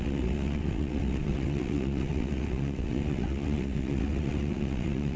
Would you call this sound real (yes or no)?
no